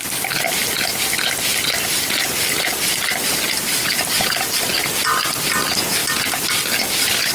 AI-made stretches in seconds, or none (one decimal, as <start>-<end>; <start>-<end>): none